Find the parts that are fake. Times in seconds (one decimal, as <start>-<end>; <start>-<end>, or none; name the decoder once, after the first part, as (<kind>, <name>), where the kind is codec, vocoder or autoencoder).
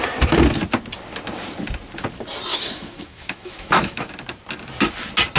2.5-4.1 (autoencoder, DAC-VAE)